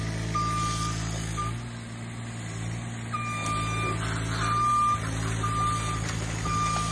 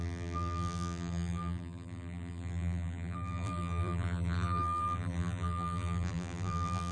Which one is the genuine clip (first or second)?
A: first